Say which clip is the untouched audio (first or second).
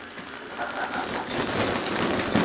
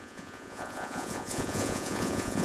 first